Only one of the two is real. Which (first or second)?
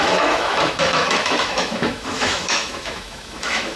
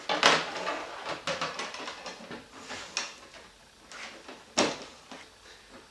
second